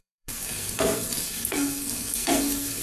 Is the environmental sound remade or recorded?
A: remade